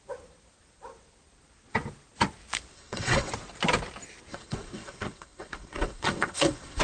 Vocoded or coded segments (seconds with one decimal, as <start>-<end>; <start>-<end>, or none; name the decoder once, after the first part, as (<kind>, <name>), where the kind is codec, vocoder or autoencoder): 2.7-3.3 (vocoder, WaveNeXt); 4.3-6.8